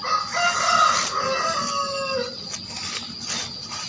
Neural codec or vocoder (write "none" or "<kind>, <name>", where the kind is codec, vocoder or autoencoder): none